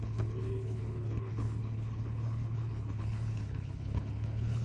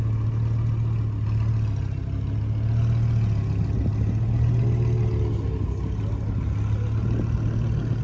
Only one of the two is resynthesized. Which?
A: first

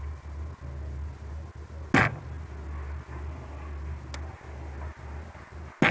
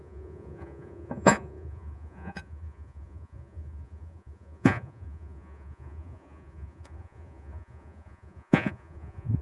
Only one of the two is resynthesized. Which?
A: second